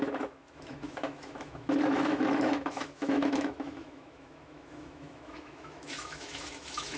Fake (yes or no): yes